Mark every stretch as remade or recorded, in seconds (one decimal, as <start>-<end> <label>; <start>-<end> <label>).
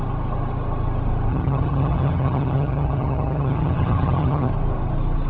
0.0-1.3 recorded; 1.3-4.5 remade; 4.5-5.3 recorded